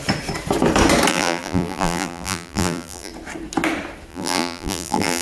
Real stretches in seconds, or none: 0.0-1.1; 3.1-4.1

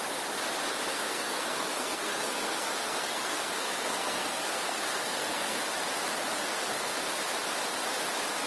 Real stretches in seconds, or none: 0.0-0.9; 5.6-6.4; 7.0-8.5

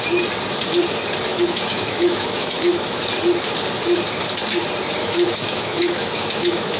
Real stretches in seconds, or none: 0.0-1.3; 3.0-5.0